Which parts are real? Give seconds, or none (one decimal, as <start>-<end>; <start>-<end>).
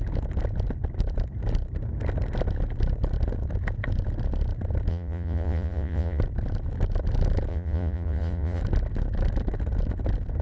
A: 0.0-4.9; 6.2-7.5; 8.6-10.4